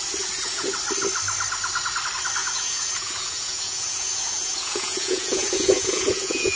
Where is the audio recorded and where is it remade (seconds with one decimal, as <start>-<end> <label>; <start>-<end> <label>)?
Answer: 0.0-2.4 recorded; 2.4-6.6 remade